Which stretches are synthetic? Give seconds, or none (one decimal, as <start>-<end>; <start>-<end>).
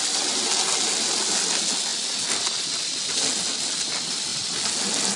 none